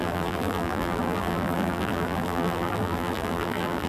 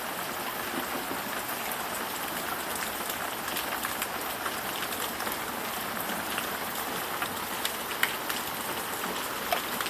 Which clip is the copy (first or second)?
first